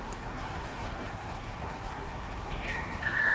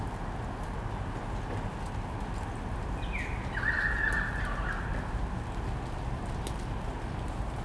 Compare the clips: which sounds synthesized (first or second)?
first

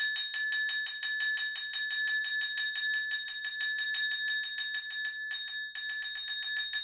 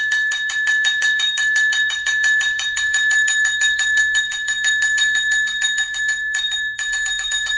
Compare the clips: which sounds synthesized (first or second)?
second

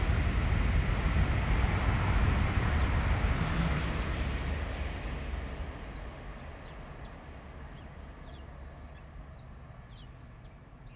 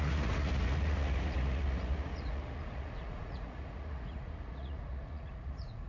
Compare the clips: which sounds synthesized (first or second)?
second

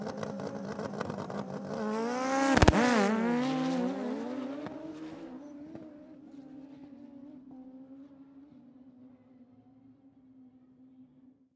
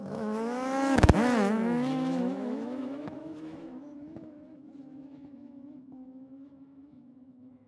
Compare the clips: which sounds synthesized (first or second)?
second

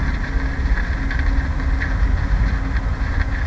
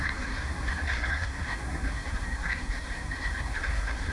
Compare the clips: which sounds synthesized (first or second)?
second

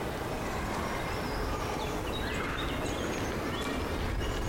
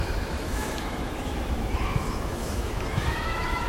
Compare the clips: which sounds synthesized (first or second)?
second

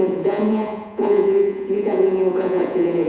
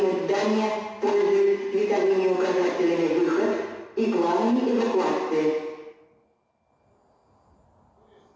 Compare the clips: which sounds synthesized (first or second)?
first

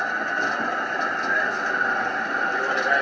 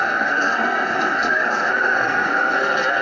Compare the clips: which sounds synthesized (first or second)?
second